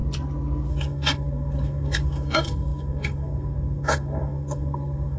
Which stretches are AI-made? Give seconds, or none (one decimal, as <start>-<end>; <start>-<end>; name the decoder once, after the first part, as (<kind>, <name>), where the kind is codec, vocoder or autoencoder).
0.7-5.2 (codec, SNAC)